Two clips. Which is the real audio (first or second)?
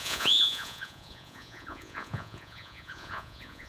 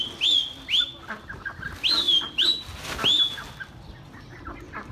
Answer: second